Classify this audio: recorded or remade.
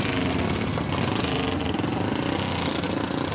recorded